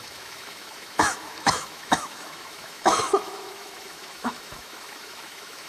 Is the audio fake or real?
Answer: fake